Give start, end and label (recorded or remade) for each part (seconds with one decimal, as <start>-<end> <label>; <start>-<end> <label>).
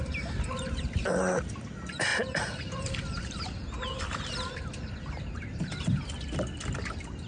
0.0-7.3 recorded